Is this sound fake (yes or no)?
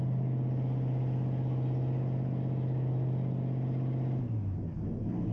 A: no